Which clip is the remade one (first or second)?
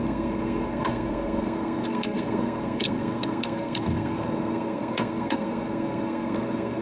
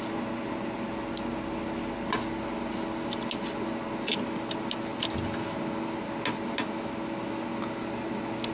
first